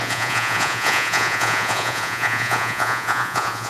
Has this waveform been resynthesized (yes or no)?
yes